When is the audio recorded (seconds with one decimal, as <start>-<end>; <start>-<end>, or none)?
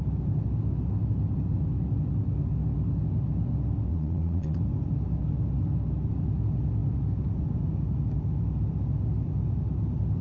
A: 0.0-3.9; 4.6-10.2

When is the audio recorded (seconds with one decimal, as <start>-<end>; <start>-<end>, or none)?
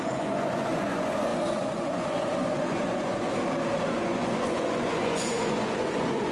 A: 3.3-3.9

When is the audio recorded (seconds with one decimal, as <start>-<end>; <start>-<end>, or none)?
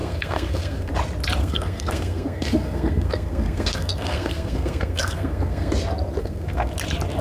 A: 0.9-1.4; 5.7-6.2; 6.7-7.2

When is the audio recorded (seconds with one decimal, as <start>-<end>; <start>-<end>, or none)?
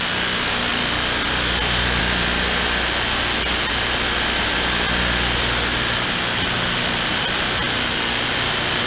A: 0.0-8.9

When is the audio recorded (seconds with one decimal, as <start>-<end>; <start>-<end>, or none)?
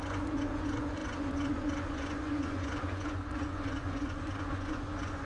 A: none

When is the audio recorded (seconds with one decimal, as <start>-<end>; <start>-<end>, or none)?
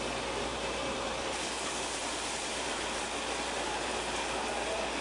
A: 0.0-0.5; 3.1-5.0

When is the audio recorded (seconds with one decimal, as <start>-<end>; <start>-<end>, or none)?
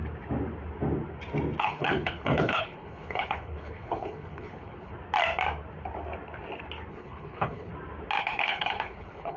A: 0.0-1.6; 4.9-6.9; 7.7-8.2